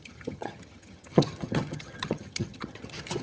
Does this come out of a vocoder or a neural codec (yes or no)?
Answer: yes